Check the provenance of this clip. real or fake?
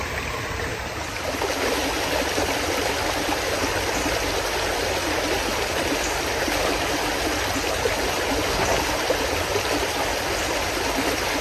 real